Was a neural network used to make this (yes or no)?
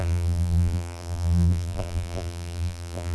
yes